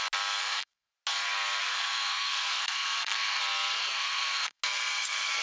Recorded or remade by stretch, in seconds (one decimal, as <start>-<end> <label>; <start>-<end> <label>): 0.0-0.4 recorded; 0.4-0.9 remade; 0.9-1.6 recorded; 1.6-3.4 remade; 3.4-3.8 recorded; 3.8-4.6 remade; 4.6-5.4 recorded